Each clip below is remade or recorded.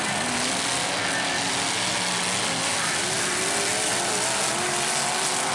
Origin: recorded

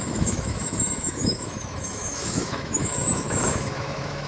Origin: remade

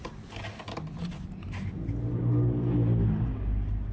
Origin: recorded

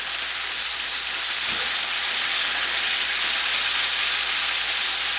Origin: recorded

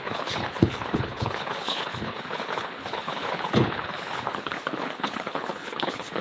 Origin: remade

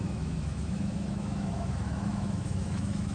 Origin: remade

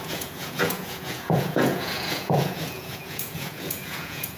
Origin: remade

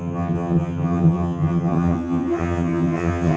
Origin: remade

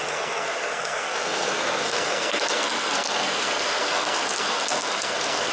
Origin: remade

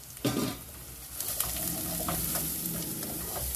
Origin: remade